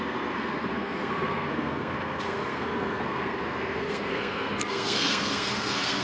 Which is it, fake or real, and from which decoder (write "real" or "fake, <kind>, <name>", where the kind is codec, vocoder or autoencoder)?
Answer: fake, codec, SNAC